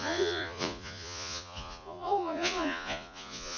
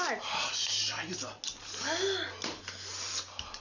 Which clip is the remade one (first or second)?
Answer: first